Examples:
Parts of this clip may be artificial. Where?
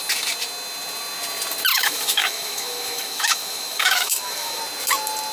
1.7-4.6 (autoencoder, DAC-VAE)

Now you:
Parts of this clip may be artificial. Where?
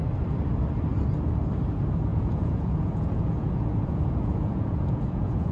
2.1-5.5 (vocoder, Vocos)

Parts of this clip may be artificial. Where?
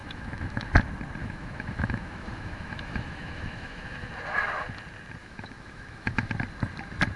0.0-0.7 (autoencoder, DAC-VAE); 1.2-4.1; 5.2-6.3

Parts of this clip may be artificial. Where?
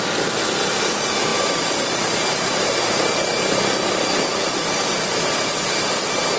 none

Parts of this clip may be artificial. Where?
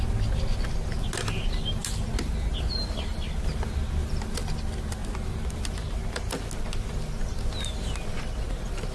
none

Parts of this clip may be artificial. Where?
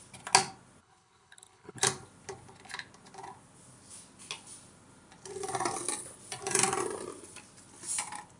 0.8-1.8 (codec, HILCodec)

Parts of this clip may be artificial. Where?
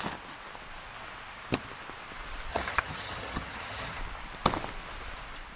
2.5-4.0 (vocoder, HiFi-GAN)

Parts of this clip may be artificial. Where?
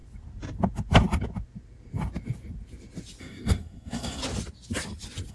3.2-4.2 (codec, SNAC)